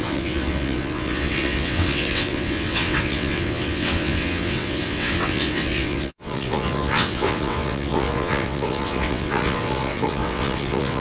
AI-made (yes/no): yes